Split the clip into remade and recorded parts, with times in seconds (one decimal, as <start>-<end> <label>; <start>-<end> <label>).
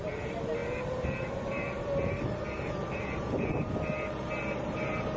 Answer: 0.0-5.2 remade